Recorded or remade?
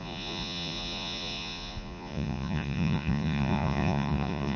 remade